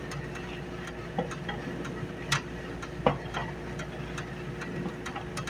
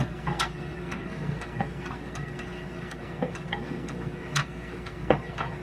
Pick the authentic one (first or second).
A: first